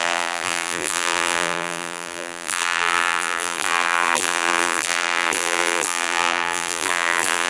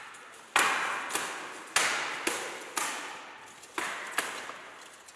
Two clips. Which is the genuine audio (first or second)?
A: second